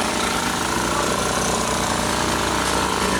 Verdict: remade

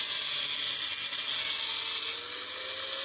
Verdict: recorded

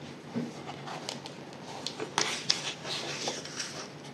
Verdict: recorded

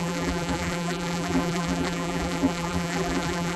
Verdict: remade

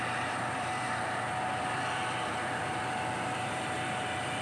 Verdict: remade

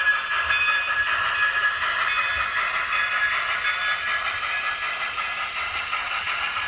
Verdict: recorded